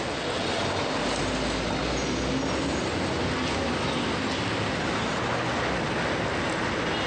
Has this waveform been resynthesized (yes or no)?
no